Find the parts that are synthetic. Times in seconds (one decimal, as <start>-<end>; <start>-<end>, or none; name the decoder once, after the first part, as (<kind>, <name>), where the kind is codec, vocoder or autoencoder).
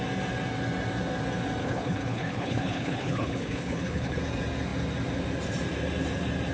1.6-4.2 (codec, HILCodec)